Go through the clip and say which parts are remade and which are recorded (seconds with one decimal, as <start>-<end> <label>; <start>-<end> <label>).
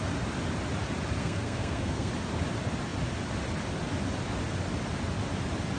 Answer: 0.0-1.2 recorded; 1.2-2.1 remade; 2.1-5.8 recorded